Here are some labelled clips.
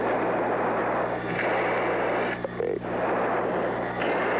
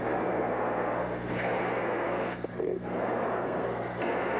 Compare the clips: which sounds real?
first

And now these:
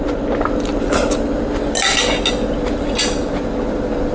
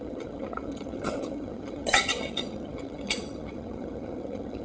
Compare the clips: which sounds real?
first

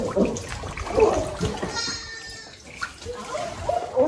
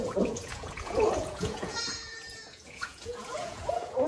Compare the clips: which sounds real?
first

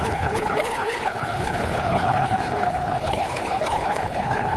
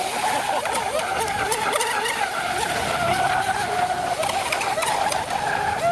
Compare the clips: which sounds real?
second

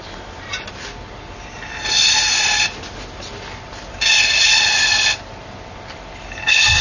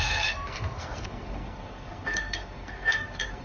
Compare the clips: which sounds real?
first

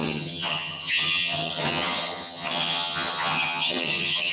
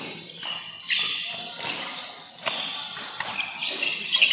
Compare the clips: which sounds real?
second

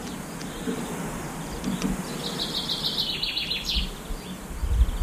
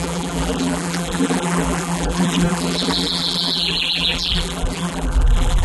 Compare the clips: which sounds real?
first